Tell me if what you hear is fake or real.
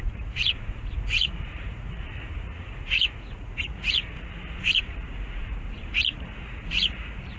fake